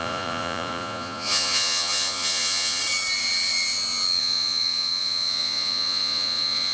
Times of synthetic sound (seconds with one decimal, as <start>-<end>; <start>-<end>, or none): 0.0-2.8; 4.2-6.7